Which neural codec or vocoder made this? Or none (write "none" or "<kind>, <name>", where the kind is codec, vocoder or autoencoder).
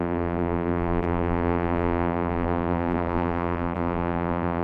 vocoder, BigVGAN v2